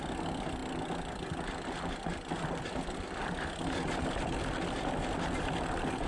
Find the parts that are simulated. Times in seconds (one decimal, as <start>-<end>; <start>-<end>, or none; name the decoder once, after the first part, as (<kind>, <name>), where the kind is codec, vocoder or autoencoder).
none